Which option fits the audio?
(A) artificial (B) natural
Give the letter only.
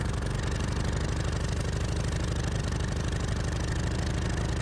B